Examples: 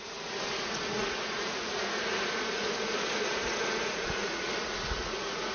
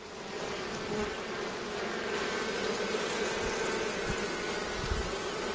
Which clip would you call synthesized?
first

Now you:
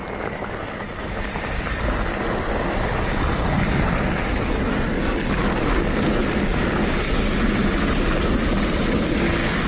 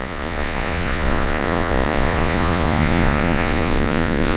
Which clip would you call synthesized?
second